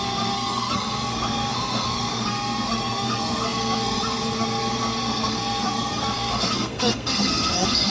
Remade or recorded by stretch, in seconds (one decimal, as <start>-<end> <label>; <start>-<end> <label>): 0.0-7.9 remade

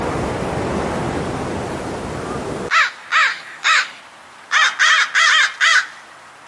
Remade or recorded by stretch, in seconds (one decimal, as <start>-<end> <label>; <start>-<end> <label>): 0.0-3.3 recorded; 3.3-4.0 remade; 4.0-6.5 recorded